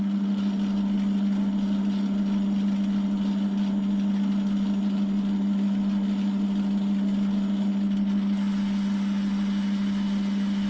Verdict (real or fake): real